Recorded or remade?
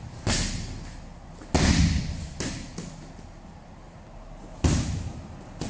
recorded